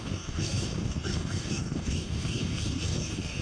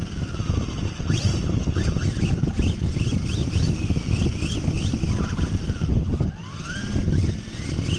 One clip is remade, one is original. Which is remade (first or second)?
first